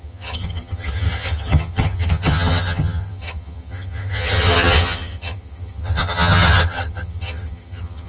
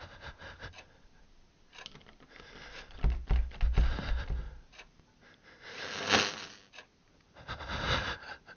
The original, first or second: second